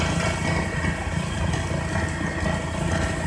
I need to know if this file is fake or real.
real